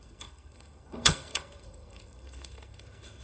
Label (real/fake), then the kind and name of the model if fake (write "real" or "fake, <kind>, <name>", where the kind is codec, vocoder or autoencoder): fake, codec, SNAC